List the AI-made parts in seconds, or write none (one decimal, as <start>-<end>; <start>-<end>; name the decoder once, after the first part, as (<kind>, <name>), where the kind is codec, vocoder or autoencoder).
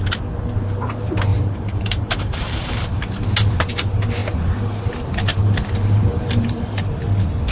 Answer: 1.3-3.0 (vocoder, BigVGAN v2); 5.3-6.8